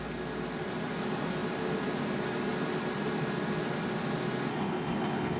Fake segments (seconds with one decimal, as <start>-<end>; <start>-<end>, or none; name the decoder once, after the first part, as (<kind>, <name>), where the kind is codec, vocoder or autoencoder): 4.5-5.4 (codec, HILCodec)